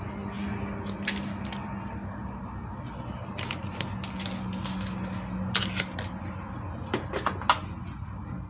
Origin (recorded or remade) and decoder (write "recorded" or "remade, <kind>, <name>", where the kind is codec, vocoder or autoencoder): recorded